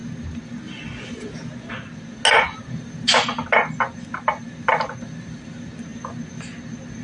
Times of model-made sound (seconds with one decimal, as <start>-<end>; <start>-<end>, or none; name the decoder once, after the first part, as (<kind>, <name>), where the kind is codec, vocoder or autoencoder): none